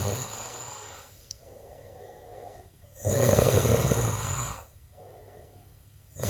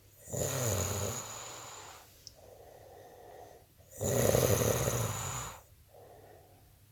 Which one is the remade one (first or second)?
first